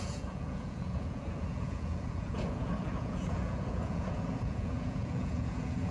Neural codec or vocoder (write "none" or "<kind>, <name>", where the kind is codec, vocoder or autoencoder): vocoder, Vocos